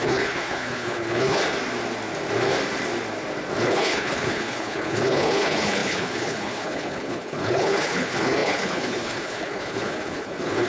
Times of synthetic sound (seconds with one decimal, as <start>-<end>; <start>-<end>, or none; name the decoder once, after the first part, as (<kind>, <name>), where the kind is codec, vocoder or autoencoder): 0.0-1.4 (codec, HILCodec); 3.6-10.7